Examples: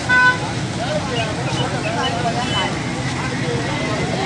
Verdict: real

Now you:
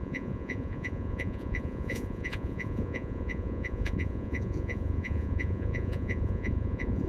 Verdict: fake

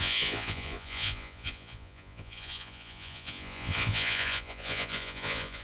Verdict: fake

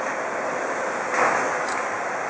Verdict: real